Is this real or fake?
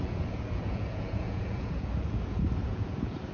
fake